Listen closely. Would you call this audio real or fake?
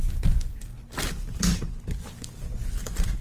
fake